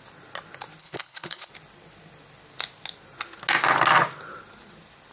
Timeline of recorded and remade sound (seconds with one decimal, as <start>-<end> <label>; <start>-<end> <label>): 0.0-0.8 recorded; 0.8-1.5 remade; 1.5-5.1 recorded